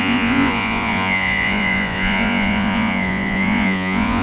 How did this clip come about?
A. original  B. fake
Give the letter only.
B